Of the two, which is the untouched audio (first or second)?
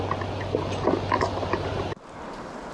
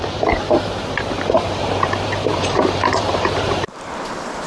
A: first